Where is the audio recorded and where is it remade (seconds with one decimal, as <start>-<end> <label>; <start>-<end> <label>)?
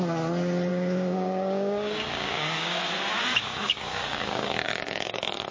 0.0-0.7 recorded; 0.7-2.8 remade; 2.8-3.3 recorded; 3.3-5.5 remade